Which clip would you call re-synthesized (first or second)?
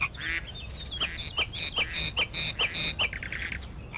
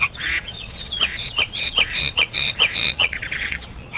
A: second